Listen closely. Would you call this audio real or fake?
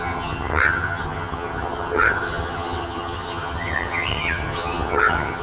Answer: fake